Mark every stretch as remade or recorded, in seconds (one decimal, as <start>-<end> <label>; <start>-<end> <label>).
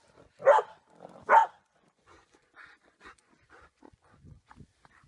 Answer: 0.0-1.4 recorded; 1.4-4.5 remade; 4.5-5.1 recorded